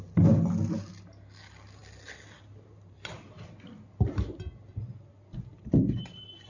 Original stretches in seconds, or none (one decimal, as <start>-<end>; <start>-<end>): 0.0-6.5